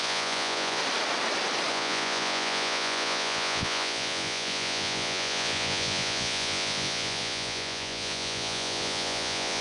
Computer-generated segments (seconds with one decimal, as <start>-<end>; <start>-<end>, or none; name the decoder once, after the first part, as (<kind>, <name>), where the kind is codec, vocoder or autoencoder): 0.0-0.8 (vocoder, Vocos); 1.7-9.6